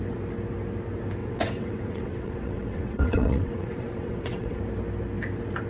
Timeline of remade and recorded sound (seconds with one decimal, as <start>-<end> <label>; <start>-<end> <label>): 0.0-1.2 recorded; 1.2-4.6 remade; 4.6-5.7 recorded